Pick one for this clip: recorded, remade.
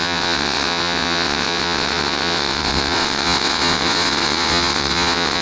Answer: remade